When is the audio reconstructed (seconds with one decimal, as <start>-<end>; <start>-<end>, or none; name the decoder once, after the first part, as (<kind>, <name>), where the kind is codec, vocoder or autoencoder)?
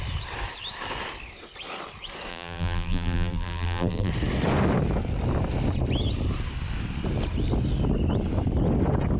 2.3-4.1 (vocoder, BigVGAN v2)